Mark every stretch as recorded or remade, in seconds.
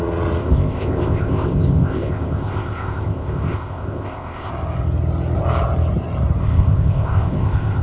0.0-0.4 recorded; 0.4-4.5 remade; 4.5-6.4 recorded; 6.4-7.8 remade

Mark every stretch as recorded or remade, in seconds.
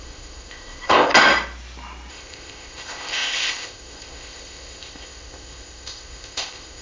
0.0-1.1 remade; 1.1-2.1 recorded; 2.1-6.8 remade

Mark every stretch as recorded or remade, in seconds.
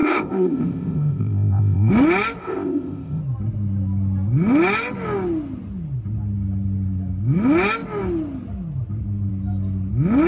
0.0-1.9 remade; 1.9-2.4 recorded; 2.4-3.2 remade; 3.2-10.3 recorded